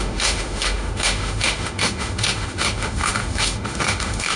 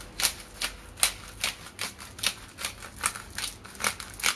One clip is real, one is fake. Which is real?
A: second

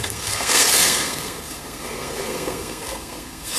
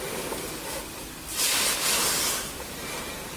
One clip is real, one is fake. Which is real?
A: second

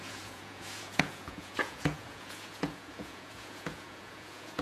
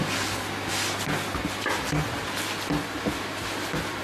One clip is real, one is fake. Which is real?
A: second